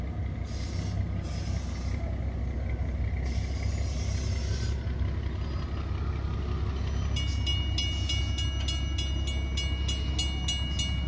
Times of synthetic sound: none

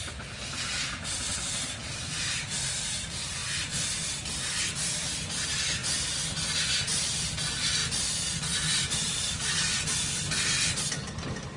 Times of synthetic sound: 1.8-2.6 (vocoder, BigVGAN v2)

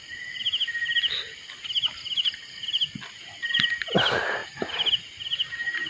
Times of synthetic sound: 4.4-4.9 (vocoder, BigVGAN v2)

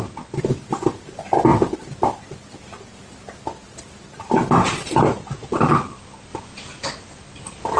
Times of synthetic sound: none

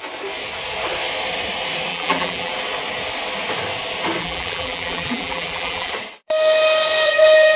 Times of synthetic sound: 1.9-2.5 (vocoder, BigVGAN v2); 4.2-5.9

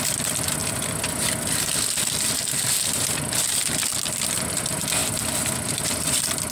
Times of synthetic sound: none

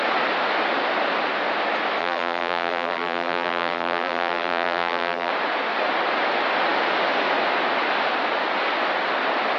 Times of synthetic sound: 2.0-5.3 (vocoder, BigVGAN v2)